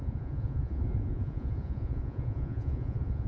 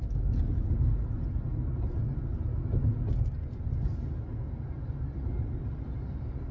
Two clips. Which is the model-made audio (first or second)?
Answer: first